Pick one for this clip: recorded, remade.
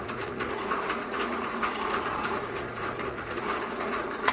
remade